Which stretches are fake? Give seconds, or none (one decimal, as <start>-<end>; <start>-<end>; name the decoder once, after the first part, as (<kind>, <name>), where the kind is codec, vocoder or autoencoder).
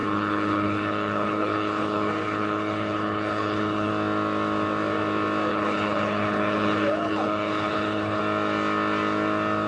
0.0-3.9 (codec, HILCodec); 5.5-8.2